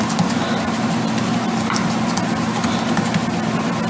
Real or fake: real